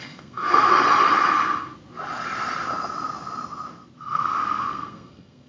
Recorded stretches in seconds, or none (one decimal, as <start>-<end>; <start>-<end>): 0.7-4.0